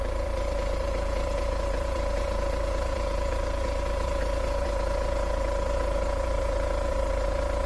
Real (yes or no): no